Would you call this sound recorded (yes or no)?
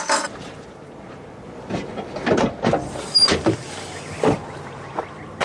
yes